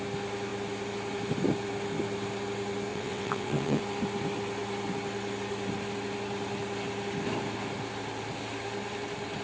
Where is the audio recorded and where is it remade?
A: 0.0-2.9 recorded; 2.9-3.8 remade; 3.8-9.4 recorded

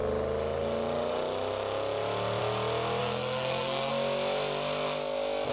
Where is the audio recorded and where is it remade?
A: 0.0-3.0 recorded; 3.0-3.9 remade; 3.9-5.5 recorded

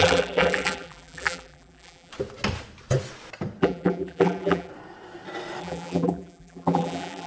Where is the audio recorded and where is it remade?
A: 0.0-2.1 remade; 2.1-3.6 recorded; 3.6-4.7 remade; 4.7-5.6 recorded; 5.6-7.3 remade

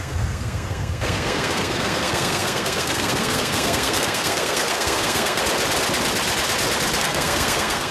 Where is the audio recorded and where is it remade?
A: 0.0-5.4 remade; 5.4-7.0 recorded; 7.0-7.9 remade